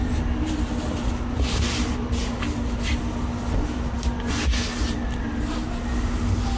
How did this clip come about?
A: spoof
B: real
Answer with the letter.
B